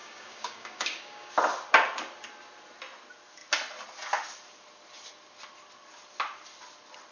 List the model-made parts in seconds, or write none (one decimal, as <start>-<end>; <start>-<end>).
0.0-1.3